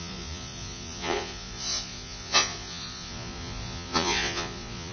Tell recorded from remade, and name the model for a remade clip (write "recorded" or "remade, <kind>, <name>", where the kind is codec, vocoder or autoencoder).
remade, vocoder, Vocos